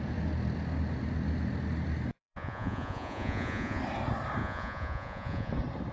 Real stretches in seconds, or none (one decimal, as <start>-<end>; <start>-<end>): 0.0-2.2; 3.8-4.4; 5.5-5.9